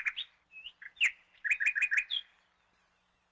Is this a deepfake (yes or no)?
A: no